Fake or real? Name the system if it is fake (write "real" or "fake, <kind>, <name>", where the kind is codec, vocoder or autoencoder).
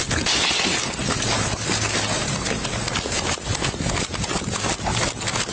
real